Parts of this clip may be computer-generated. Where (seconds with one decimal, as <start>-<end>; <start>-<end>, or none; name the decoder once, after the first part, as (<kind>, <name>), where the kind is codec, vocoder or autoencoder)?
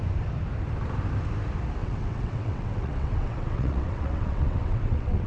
1.8-5.3 (vocoder, WaveNeXt)